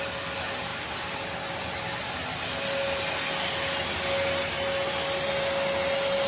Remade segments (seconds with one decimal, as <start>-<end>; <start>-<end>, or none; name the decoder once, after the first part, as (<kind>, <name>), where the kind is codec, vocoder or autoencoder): none